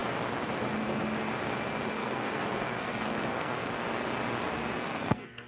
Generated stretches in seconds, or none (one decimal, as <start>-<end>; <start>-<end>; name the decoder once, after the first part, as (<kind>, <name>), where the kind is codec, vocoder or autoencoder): 2.0-3.7 (codec, SNAC); 4.8-5.5